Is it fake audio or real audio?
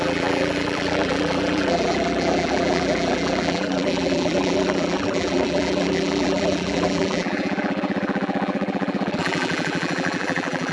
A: fake